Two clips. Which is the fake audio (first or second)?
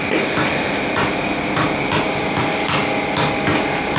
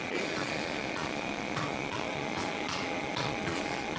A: second